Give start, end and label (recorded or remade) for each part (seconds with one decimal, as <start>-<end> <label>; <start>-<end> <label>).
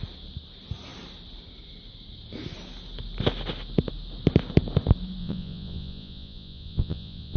0.0-5.2 recorded; 5.2-7.4 remade